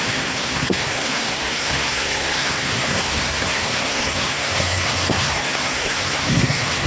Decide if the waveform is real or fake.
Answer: fake